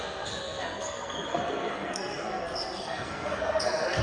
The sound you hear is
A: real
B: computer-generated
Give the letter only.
B